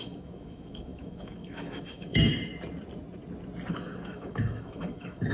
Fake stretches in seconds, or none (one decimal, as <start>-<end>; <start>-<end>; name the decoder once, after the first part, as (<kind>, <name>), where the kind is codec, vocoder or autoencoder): 0.0-2.5 (autoencoder, DAC-VAE); 3.7-5.3